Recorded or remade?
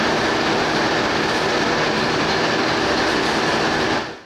recorded